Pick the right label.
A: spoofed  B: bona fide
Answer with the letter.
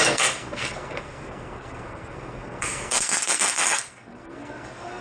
A